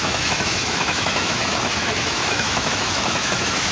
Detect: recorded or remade remade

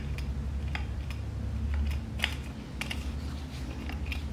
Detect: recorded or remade recorded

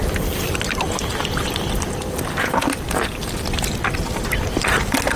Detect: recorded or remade recorded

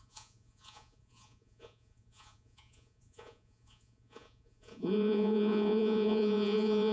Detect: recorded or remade remade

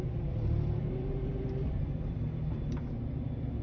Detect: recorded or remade remade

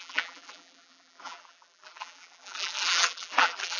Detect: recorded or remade remade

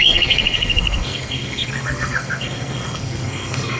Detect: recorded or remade remade